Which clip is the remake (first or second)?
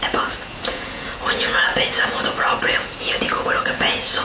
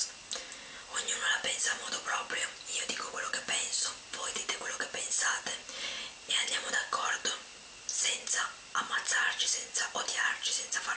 first